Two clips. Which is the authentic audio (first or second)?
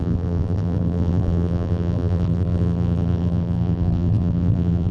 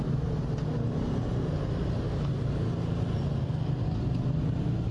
second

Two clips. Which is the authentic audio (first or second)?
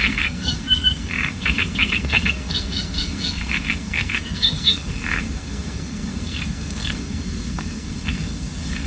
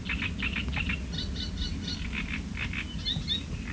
second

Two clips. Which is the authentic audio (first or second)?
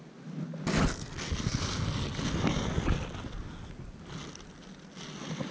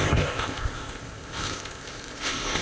first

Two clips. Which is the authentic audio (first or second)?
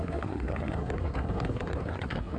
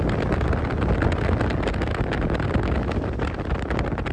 second